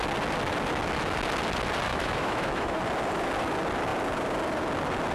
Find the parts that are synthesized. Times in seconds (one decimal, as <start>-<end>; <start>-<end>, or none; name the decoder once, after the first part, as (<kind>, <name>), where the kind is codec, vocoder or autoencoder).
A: 1.9-2.8 (autoencoder, DAC-VAE)